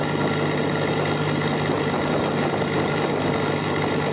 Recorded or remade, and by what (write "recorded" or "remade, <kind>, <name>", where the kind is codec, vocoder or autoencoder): recorded